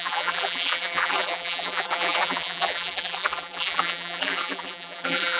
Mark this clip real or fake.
fake